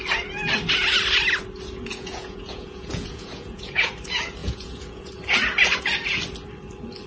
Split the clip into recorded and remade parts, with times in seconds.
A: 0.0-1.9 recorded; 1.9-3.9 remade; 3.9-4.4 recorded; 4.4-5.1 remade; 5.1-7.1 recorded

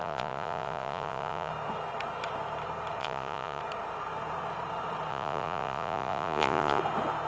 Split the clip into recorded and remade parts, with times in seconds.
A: 0.0-1.5 remade; 1.5-3.0 recorded; 3.0-3.6 remade; 3.6-5.1 recorded; 5.1-6.8 remade; 6.8-7.3 recorded

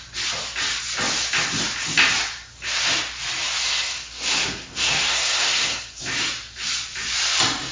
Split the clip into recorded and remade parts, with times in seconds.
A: 0.0-3.6 recorded; 3.6-6.0 remade; 6.0-7.7 recorded

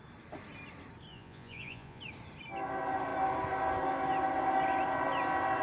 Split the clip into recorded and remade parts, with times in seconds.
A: 0.0-1.1 recorded; 1.1-2.0 remade; 2.0-5.6 recorded

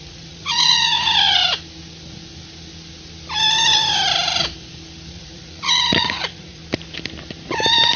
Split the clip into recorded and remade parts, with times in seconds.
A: 0.0-1.4 remade; 1.4-5.1 recorded; 5.1-6.6 remade; 6.6-8.0 recorded

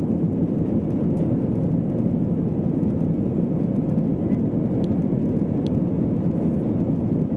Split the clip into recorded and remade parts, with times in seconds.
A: 0.0-0.4 recorded; 0.4-1.8 remade; 1.8-4.1 recorded; 4.1-5.8 remade; 5.8-7.4 recorded